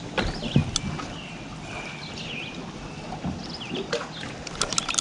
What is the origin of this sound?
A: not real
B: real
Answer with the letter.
B